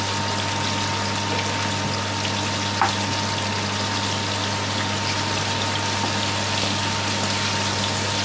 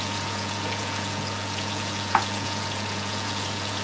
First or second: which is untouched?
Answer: first